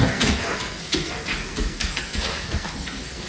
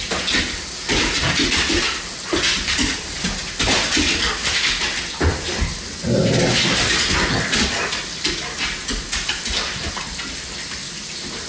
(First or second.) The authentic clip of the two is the second